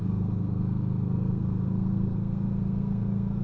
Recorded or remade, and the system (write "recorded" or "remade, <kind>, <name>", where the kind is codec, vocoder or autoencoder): remade, codec, SNAC